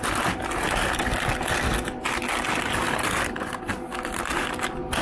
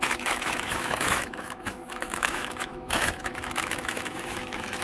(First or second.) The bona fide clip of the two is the first